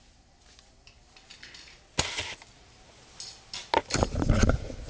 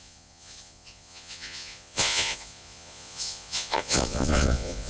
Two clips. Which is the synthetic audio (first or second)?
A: second